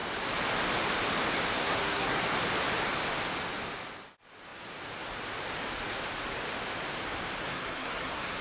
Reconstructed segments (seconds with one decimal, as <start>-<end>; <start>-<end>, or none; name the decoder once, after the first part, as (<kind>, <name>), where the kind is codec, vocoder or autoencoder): 1.6-2.2 (codec, SNAC); 7.5-8.4